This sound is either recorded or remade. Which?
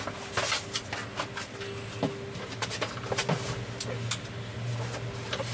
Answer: recorded